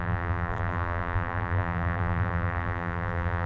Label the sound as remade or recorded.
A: remade